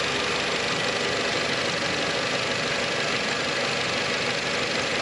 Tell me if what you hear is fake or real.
real